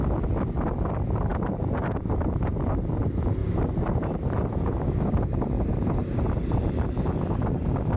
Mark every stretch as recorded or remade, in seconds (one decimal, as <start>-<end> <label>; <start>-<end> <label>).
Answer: 0.0-1.3 recorded; 1.3-2.5 remade; 2.5-3.4 recorded; 3.4-6.7 remade; 6.7-8.0 recorded